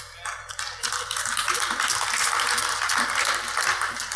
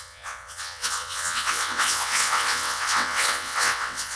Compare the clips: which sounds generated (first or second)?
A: second